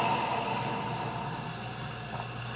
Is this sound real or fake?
real